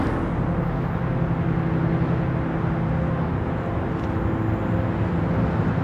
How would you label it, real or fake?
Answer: real